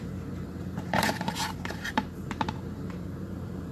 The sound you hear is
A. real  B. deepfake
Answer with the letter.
B